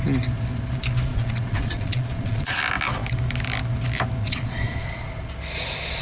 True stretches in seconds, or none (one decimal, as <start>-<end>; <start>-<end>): 0.0-1.1; 2.6-4.2; 5.3-6.0